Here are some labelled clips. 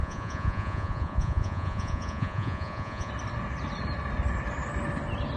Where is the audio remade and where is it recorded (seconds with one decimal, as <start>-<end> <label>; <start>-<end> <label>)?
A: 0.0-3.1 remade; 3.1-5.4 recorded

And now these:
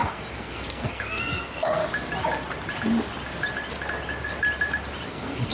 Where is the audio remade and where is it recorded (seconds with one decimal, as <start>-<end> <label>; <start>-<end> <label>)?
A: 0.0-1.8 remade; 1.8-5.1 recorded; 5.1-5.5 remade

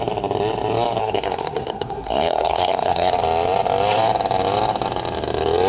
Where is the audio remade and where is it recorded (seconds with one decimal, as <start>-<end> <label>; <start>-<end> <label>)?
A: 0.0-1.0 recorded; 1.0-3.1 remade; 3.1-5.7 recorded

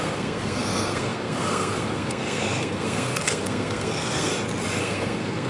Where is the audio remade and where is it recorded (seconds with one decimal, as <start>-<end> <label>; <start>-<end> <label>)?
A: 0.0-4.3 remade; 4.3-4.8 recorded; 4.8-5.5 remade

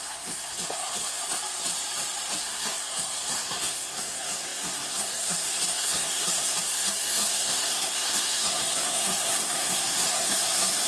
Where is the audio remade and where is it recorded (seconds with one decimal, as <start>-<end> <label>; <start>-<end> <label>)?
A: 0.0-1.2 remade; 1.2-2.4 recorded; 2.4-10.9 remade